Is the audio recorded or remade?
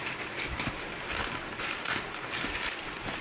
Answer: remade